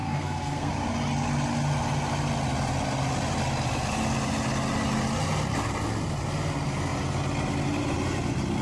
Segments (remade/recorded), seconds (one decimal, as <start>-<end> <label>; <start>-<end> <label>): 0.0-0.7 remade; 0.7-8.6 recorded